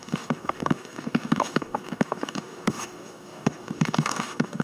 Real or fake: fake